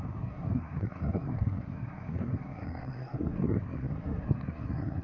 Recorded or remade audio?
remade